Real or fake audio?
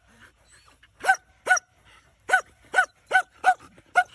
real